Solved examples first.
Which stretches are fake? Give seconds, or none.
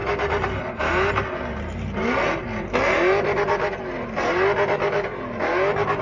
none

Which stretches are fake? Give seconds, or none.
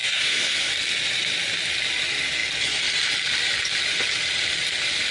0.0-0.7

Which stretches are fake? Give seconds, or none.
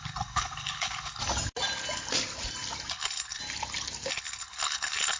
0.0-1.2; 2.9-3.4; 4.1-5.2